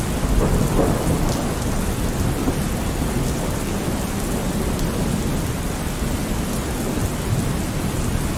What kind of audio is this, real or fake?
real